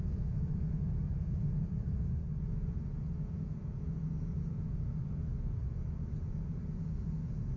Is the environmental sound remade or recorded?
remade